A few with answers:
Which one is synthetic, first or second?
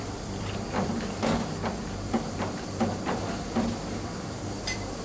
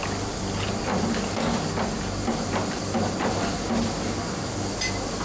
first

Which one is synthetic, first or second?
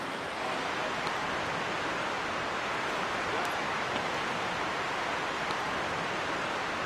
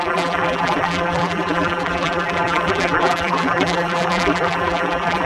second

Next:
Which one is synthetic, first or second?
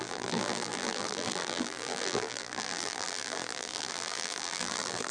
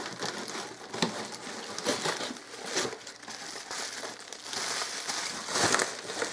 first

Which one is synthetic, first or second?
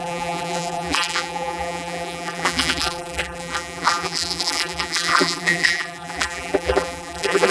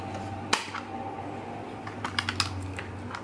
first